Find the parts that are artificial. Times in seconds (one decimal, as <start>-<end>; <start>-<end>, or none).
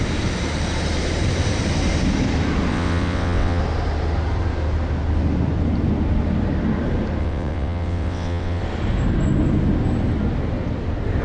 2.7-3.6; 7.2-8.6